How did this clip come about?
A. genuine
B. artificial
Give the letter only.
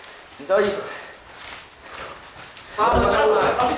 A